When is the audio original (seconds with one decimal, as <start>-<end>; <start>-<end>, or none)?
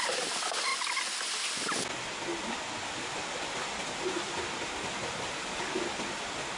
0.0-6.6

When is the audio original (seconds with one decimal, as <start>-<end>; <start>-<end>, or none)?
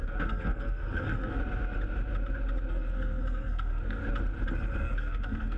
1.4-2.7; 4.0-4.8